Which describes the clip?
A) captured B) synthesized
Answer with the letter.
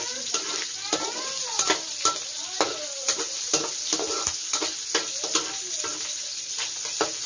A